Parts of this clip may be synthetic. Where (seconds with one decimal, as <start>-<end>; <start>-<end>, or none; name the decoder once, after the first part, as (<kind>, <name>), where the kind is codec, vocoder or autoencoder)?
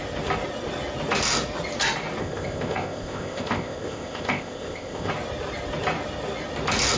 2.2-5.1 (codec, ZipCodec)